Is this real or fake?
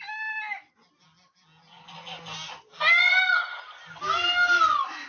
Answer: real